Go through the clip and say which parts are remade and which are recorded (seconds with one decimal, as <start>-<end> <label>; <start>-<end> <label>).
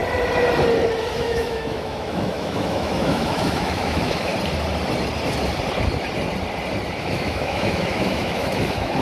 0.0-1.1 recorded; 1.1-4.3 remade; 4.3-6.9 recorded; 6.9-9.0 remade